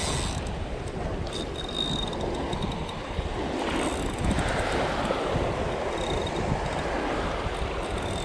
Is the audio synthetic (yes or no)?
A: no